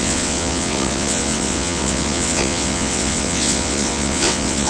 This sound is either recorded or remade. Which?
remade